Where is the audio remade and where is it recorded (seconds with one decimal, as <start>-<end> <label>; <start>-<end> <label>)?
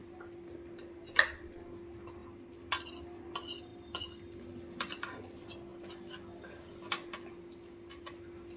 0.0-8.6 recorded